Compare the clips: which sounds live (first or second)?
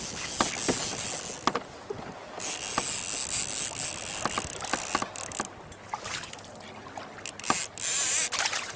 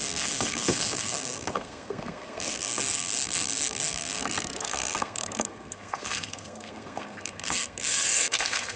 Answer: first